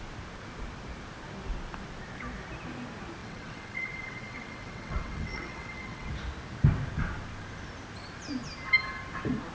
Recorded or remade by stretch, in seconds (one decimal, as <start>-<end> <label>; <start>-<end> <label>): 0.0-3.2 recorded; 3.2-6.1 remade; 6.1-9.5 recorded